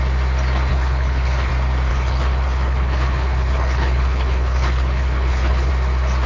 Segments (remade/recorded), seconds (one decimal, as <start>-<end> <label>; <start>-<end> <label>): 0.0-0.7 recorded; 0.7-1.5 remade; 1.5-1.9 recorded; 1.9-5.7 remade; 5.7-6.3 recorded